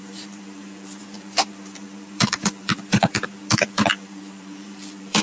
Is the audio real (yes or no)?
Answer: no